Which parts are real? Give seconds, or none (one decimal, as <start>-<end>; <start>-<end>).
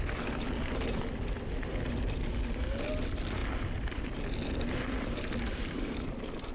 0.0-6.5